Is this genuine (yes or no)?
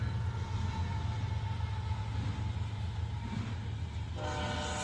yes